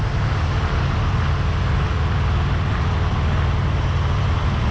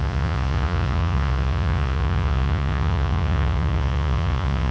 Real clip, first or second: first